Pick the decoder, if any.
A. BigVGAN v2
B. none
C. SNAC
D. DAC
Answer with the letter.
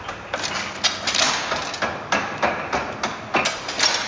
B